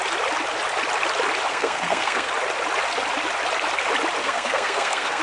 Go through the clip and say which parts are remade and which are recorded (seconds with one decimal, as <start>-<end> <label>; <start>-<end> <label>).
0.0-1.5 recorded; 1.5-2.3 remade; 2.3-4.2 recorded; 4.2-5.2 remade